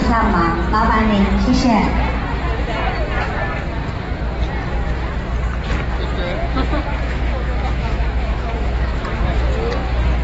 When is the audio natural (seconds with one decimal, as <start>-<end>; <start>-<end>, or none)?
0.0-6.4; 9.5-10.2